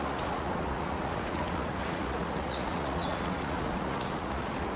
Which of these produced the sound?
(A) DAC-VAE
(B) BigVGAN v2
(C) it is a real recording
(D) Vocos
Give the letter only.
D